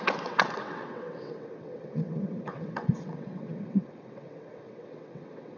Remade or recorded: remade